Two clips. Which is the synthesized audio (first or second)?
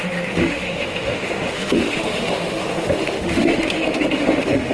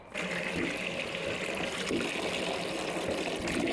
first